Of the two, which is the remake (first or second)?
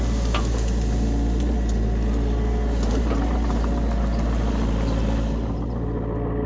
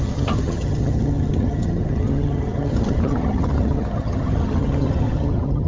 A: second